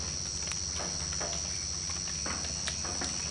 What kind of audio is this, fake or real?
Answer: real